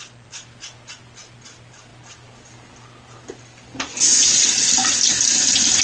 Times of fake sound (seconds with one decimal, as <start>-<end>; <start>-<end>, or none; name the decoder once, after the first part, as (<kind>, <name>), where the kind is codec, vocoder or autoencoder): none